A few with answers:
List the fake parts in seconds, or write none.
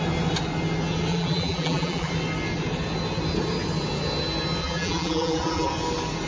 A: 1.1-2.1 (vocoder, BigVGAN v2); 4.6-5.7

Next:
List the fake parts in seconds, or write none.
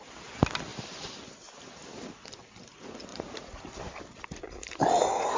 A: 3.1-3.6 (vocoder, Vocos)